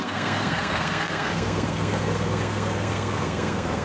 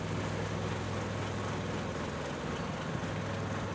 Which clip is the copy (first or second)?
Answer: first